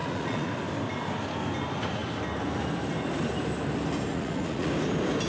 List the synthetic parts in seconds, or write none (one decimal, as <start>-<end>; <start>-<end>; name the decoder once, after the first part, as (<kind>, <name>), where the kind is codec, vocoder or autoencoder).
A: 0.0-0.5 (vocoder, Vocos); 4.1-4.7